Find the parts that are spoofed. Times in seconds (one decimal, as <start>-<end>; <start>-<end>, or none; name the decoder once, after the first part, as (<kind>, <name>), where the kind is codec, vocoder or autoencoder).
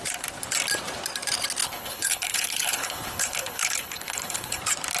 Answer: 1.6-4.6 (codec, HILCodec)